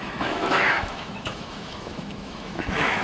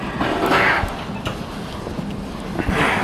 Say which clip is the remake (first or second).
first